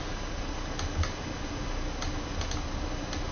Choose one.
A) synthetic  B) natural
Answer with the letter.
B